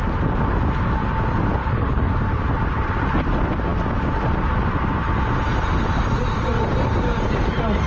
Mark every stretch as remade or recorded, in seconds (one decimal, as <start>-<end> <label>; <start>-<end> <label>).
0.0-1.6 recorded; 1.6-2.1 remade; 2.1-7.9 recorded